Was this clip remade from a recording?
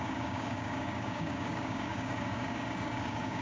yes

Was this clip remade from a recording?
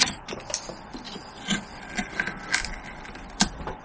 no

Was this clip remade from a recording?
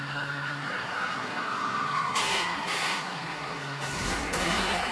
yes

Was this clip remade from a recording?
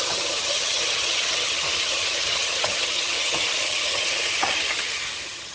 yes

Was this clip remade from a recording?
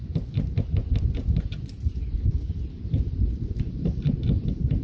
no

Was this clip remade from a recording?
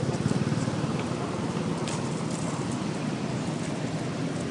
no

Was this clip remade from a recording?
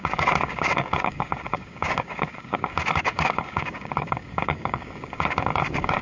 yes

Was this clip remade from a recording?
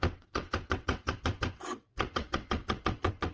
yes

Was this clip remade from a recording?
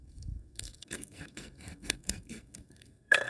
yes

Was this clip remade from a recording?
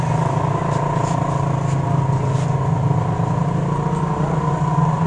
no